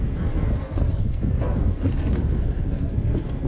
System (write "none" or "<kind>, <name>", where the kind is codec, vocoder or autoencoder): codec, SNAC